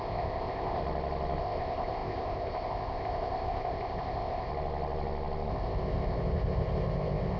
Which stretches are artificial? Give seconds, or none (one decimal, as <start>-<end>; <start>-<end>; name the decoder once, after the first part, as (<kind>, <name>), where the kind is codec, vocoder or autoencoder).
0.0-0.8 (codec, ZipCodec); 1.4-4.5; 5.5-7.4